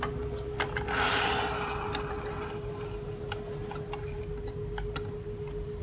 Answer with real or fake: real